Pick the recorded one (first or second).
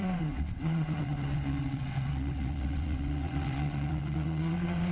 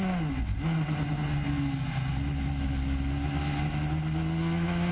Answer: second